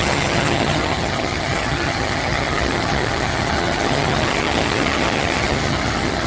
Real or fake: fake